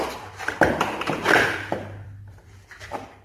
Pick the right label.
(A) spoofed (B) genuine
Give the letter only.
A